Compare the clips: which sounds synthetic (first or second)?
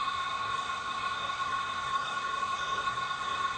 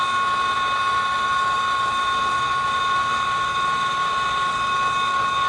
first